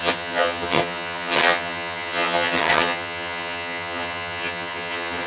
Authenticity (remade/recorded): remade